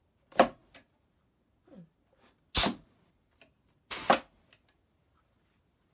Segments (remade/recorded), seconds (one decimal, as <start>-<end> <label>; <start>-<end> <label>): 0.0-5.9 recorded